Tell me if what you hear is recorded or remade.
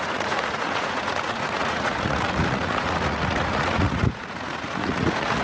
remade